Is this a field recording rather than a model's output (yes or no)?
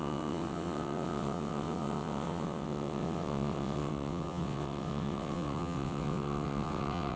no